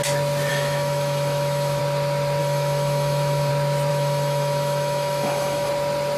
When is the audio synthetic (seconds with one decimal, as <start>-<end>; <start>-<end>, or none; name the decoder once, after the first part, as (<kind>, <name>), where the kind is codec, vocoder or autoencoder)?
0.5-1.8 (autoencoder, DAC-VAE); 2.4-3.5; 3.9-5.7